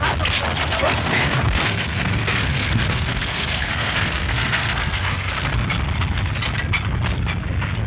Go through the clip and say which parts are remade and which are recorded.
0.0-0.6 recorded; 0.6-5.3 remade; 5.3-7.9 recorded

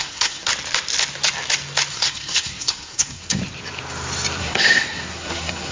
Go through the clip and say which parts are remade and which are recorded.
0.0-0.5 remade; 0.5-1.9 recorded; 1.9-3.4 remade; 3.4-4.4 recorded; 4.4-5.7 remade

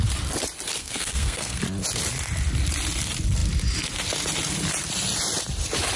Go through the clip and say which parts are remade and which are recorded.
0.0-0.8 recorded; 0.8-1.6 remade; 1.6-6.0 recorded